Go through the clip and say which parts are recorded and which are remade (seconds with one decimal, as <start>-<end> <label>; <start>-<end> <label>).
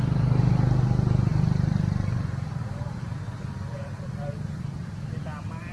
0.0-5.7 recorded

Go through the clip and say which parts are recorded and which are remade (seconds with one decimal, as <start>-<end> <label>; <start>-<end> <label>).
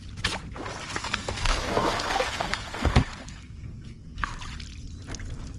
0.0-1.0 recorded; 1.0-4.4 remade; 4.4-5.6 recorded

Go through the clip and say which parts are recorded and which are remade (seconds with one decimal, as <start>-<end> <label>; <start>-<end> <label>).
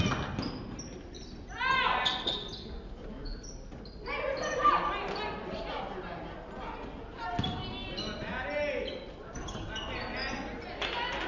0.0-11.3 recorded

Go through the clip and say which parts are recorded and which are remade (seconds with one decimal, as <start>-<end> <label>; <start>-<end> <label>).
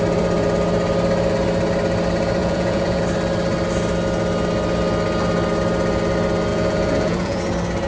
0.0-2.4 recorded; 2.4-3.0 remade; 3.0-6.5 recorded; 6.5-7.4 remade; 7.4-7.9 recorded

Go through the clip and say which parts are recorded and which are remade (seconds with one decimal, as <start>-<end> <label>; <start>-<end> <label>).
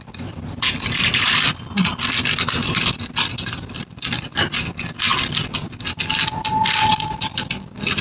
0.0-8.0 recorded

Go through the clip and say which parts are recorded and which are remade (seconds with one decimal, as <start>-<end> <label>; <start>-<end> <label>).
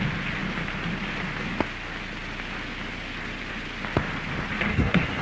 0.0-4.7 recorded; 4.7-5.2 remade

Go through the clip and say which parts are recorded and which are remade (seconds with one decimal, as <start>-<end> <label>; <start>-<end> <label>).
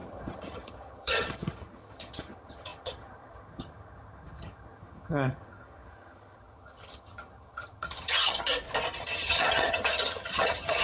0.0-8.5 remade; 8.5-9.0 recorded; 9.0-10.8 remade